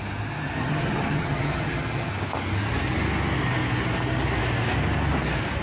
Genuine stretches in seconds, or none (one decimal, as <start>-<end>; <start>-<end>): 0.0-0.6; 2.1-5.6